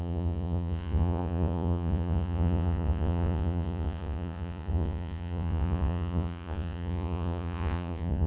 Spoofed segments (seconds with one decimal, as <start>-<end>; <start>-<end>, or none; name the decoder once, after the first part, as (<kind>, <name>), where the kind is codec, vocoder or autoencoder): 0.0-8.3 (vocoder, Vocos)